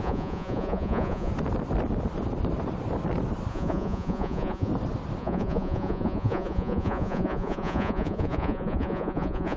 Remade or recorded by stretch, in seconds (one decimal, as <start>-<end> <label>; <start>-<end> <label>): 0.0-1.3 remade; 1.3-3.5 recorded; 3.5-4.7 remade; 4.7-5.2 recorded; 5.2-9.6 remade